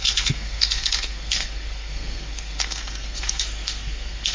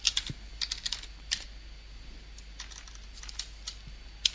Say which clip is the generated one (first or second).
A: first